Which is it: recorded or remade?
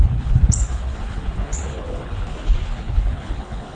remade